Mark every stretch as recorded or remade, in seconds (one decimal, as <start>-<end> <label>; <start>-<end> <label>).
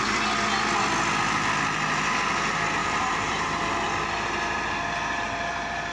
0.0-2.8 recorded; 2.8-3.7 remade; 3.7-5.9 recorded